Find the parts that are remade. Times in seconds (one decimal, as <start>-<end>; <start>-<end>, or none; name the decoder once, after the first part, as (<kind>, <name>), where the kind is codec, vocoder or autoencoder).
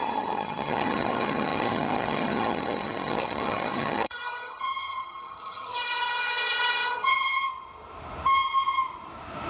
0.0-7.5 (vocoder, HiFi-GAN)